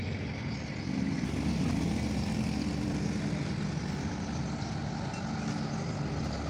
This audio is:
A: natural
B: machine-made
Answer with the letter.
A